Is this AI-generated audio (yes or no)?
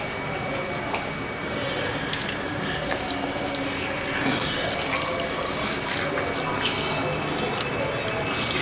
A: no